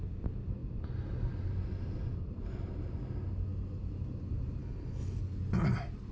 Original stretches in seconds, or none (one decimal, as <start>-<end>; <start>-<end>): 0.0-4.6; 5.2-6.1